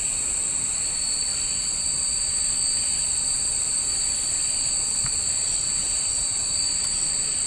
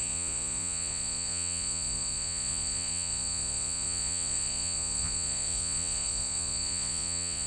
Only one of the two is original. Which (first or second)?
first